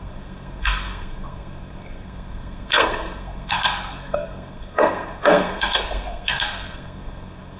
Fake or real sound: fake